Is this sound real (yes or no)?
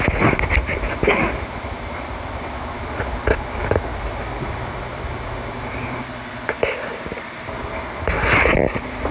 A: no